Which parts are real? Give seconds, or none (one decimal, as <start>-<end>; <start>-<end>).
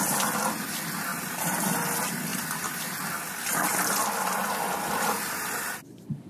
0.0-1.1; 1.7-6.3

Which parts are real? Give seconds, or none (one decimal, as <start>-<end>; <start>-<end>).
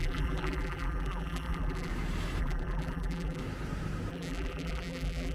1.9-2.4; 3.4-4.1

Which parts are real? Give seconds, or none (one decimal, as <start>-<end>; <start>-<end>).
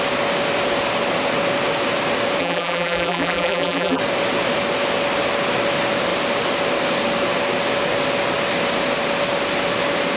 0.0-2.4; 4.0-10.2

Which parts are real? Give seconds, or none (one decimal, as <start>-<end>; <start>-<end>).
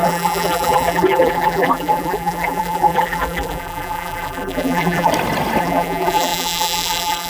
5.1-5.6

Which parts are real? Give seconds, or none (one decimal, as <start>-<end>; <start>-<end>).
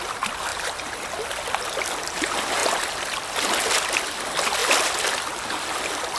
0.0-0.5; 1.1-6.2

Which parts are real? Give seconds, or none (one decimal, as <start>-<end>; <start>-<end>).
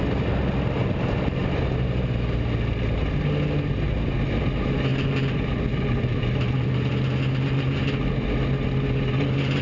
0.0-4.9; 6.9-9.6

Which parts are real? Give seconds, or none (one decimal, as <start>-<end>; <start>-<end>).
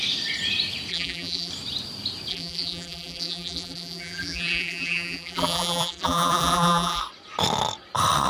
0.0-0.9; 1.5-2.3; 7.0-8.3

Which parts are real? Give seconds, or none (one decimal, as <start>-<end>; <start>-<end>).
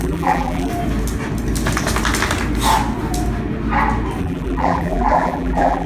0.7-4.2